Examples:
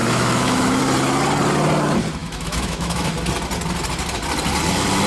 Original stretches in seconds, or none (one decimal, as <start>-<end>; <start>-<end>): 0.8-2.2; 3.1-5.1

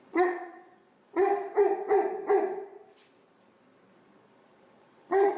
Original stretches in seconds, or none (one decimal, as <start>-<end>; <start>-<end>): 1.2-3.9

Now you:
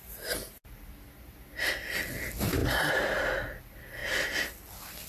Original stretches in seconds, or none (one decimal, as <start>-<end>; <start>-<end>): 0.0-5.1

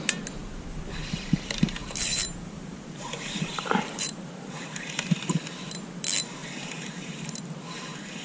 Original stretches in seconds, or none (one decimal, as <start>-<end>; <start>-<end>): 0.0-1.8; 5.5-6.4; 7.4-8.2

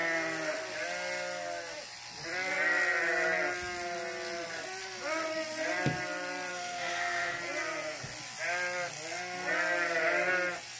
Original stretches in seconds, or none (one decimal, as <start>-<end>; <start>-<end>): 0.0-6.5; 7.4-10.8